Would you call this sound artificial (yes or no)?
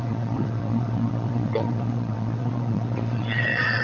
yes